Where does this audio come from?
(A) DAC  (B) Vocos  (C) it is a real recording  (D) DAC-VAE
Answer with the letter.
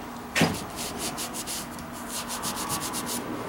C